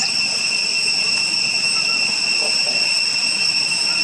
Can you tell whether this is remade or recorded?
recorded